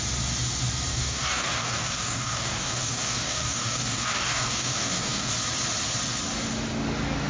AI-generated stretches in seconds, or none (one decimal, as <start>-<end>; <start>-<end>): 0.9-5.3